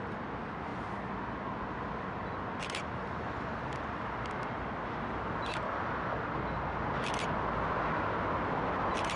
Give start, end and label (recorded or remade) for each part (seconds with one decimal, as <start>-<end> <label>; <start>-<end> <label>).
0.0-9.2 recorded